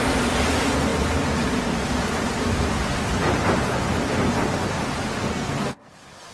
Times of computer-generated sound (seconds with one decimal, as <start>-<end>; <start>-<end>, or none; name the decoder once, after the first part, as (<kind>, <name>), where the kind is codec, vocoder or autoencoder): 5.3-6.3 (codec, SNAC)